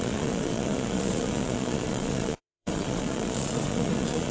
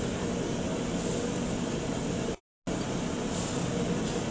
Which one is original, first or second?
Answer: second